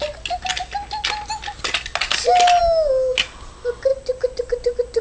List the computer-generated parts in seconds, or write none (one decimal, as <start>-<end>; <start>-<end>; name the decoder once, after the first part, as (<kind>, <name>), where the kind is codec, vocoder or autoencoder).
none